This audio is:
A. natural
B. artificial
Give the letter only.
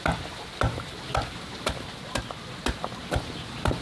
A